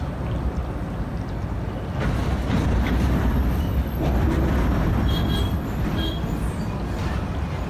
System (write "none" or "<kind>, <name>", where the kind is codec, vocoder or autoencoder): none